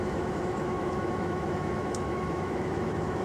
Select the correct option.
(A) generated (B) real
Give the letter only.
A